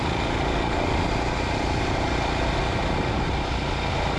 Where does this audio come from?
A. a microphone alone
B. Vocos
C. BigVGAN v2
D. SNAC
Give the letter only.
A